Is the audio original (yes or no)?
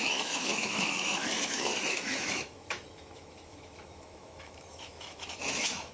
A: no